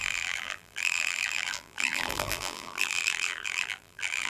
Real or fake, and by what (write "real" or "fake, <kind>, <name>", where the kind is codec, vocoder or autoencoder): fake, vocoder, BigVGAN v2